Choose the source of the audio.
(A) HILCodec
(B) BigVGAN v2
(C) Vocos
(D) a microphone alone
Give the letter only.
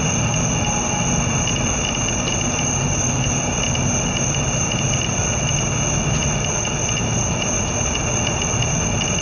D